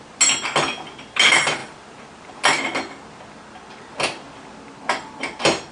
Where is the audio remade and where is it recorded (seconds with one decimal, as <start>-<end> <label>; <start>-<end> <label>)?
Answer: 0.0-5.7 recorded